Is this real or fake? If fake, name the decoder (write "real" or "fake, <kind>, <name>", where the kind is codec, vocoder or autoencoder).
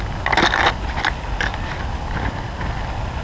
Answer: real